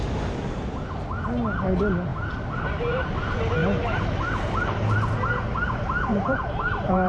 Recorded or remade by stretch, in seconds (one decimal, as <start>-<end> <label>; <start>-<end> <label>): 0.0-3.6 recorded; 3.6-5.4 remade; 5.4-6.1 recorded; 6.1-7.1 remade